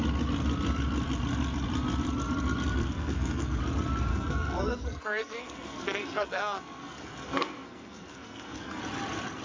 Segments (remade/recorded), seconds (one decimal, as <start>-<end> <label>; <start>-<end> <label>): 0.0-2.8 recorded; 2.8-3.6 remade; 3.6-4.1 recorded; 4.1-8.8 remade; 8.8-9.4 recorded